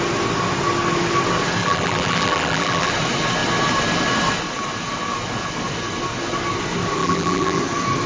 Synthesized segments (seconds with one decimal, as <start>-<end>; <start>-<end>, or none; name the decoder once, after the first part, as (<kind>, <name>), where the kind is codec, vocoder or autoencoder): 1.6-2.9 (vocoder, BigVGAN v2); 7.0-7.6